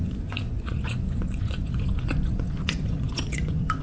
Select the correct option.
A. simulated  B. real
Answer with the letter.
A